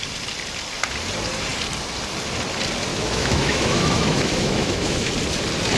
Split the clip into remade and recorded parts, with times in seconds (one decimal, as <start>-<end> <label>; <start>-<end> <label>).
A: 0.0-2.9 recorded; 2.9-5.1 remade; 5.1-5.8 recorded